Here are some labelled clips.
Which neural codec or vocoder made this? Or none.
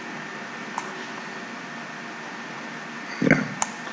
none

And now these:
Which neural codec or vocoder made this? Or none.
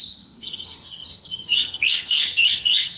codec, SNAC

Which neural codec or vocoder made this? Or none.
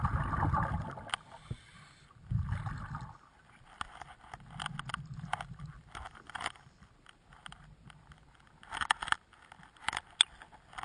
none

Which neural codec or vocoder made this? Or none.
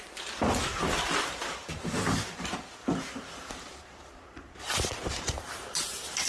none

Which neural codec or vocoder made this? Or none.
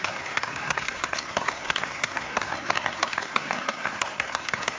codec, SNAC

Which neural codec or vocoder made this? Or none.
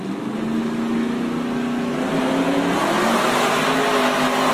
none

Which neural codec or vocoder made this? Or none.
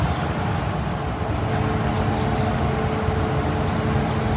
none